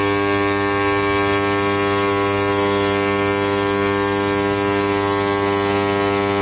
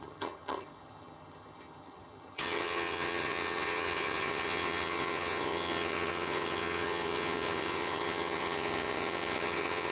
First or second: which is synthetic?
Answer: second